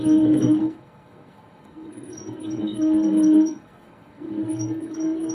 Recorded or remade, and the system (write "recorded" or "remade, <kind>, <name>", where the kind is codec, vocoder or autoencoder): remade, codec, SNAC